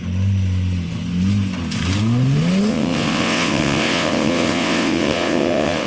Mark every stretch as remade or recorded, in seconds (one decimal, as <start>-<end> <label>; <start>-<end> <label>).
0.0-2.7 recorded; 2.7-5.9 remade